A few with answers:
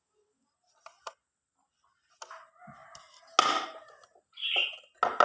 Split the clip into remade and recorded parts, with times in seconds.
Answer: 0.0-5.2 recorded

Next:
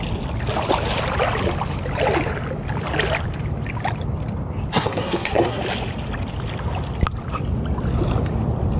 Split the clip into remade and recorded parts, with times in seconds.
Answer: 0.0-4.7 recorded; 4.7-5.6 remade; 5.6-8.8 recorded

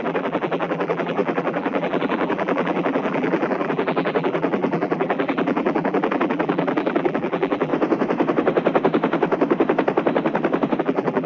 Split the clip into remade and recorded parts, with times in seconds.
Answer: 0.0-7.7 remade; 7.7-10.8 recorded; 10.8-11.3 remade